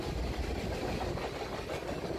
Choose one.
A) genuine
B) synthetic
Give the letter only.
A